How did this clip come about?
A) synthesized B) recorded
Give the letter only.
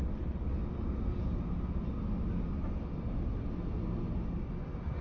B